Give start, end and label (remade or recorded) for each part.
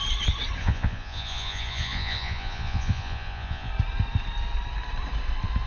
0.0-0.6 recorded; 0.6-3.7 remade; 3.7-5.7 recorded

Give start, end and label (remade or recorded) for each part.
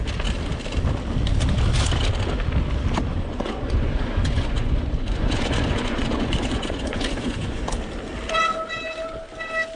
0.0-3.1 recorded; 3.1-7.7 remade; 7.7-9.8 recorded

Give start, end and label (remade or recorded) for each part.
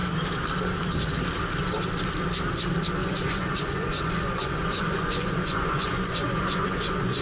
0.0-3.0 recorded; 3.0-7.2 remade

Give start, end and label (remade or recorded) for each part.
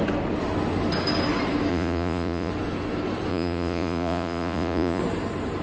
0.0-1.7 recorded; 1.7-2.5 remade; 2.5-3.3 recorded; 3.3-5.0 remade; 5.0-5.6 recorded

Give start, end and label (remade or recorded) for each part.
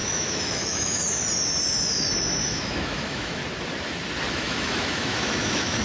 0.0-1.0 remade; 1.0-2.4 recorded; 2.4-3.4 remade; 3.4-4.3 recorded; 4.3-5.8 remade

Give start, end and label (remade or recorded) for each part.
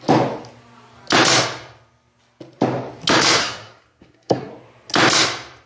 0.0-3.4 recorded; 3.4-4.5 remade; 4.5-5.7 recorded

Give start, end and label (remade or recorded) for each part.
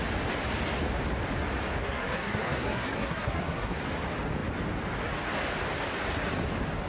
0.0-1.8 recorded; 1.8-3.8 remade; 3.8-6.9 recorded